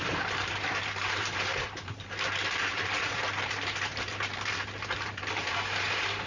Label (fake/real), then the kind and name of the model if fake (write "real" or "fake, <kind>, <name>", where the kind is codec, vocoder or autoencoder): fake, vocoder, BigVGAN v2